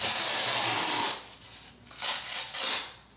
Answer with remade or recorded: recorded